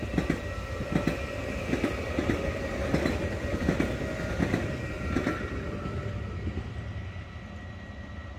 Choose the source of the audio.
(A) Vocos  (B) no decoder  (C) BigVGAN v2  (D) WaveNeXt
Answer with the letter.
B